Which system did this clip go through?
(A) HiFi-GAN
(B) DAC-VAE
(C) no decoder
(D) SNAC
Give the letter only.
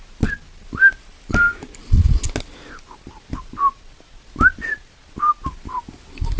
C